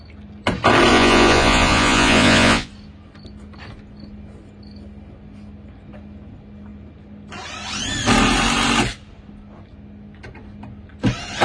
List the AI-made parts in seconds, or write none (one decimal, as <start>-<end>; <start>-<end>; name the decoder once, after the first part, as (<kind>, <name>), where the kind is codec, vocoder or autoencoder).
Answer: 0.9-2.7 (vocoder, Vocos)